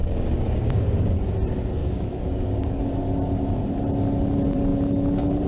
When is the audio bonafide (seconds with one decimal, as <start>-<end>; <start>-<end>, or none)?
1.2-1.8; 2.8-5.5